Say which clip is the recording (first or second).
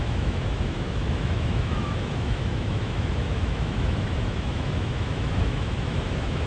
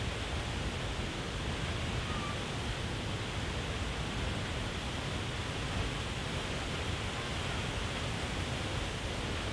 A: second